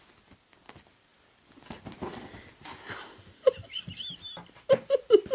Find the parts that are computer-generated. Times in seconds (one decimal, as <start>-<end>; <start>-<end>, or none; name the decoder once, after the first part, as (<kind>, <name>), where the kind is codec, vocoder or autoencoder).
none